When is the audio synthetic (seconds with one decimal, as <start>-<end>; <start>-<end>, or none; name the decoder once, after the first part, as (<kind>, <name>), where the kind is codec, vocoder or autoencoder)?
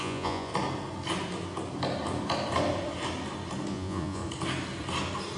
0.0-0.5 (vocoder, Vocos); 3.7-4.2